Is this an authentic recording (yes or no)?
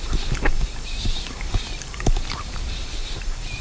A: no